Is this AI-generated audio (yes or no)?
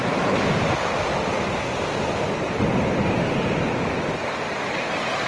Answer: no